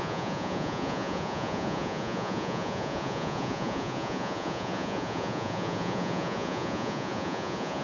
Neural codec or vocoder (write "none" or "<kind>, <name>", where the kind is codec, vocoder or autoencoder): vocoder, Vocos